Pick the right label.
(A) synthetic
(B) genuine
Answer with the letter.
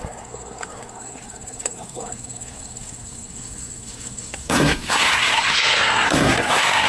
A